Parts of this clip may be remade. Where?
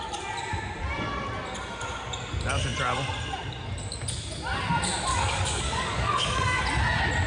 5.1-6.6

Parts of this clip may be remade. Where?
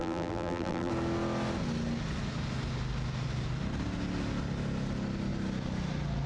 0.0-0.9